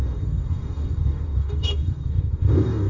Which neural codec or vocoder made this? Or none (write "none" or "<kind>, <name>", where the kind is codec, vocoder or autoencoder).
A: codec, DAC